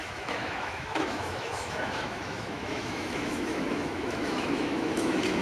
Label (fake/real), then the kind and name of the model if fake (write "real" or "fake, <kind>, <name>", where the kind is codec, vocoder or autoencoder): fake, autoencoder, DAC-VAE